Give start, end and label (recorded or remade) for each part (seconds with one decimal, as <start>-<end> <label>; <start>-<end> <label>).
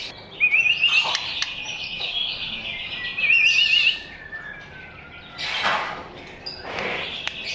0.0-1.7 recorded; 1.7-2.9 remade; 2.9-7.5 recorded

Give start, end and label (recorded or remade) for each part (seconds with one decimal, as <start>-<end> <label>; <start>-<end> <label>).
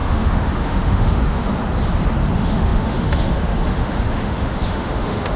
0.0-1.5 remade; 1.5-2.3 recorded; 2.3-5.4 remade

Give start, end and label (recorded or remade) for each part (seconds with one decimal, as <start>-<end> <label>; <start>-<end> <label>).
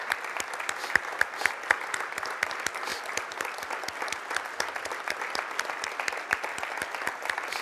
0.0-7.6 recorded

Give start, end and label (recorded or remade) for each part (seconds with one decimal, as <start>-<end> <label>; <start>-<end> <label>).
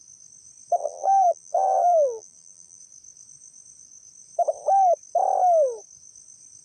0.0-0.8 recorded; 0.8-2.8 remade; 2.8-6.6 recorded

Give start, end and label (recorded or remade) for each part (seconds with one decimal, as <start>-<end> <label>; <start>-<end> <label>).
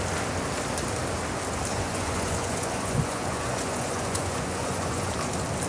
0.0-1.7 recorded; 1.7-5.1 remade; 5.1-5.7 recorded